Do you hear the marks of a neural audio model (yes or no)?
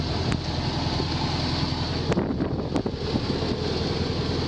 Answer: no